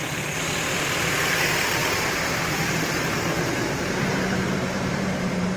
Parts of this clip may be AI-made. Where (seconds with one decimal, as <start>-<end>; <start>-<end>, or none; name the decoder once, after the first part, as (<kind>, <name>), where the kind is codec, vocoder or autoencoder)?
1.8-5.6 (vocoder, BigVGAN v2)